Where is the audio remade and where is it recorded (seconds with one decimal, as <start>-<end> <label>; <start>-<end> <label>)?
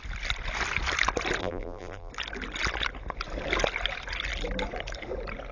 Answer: 0.0-1.4 recorded; 1.4-2.1 remade; 2.1-5.5 recorded